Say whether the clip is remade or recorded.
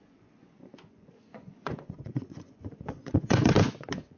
remade